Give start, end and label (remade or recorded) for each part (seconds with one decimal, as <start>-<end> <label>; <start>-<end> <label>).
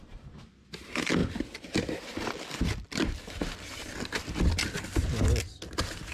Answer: 0.0-1.2 recorded; 1.2-4.3 remade; 4.3-6.1 recorded